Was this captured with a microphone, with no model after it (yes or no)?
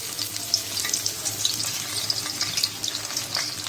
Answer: yes